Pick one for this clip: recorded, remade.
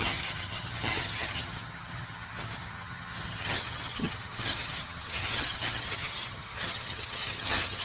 remade